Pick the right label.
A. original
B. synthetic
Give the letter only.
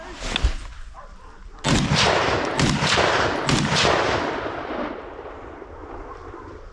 A